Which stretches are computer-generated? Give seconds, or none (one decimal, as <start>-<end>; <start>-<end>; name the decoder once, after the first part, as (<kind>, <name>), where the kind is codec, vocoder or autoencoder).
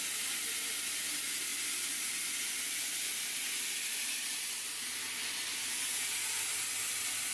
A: none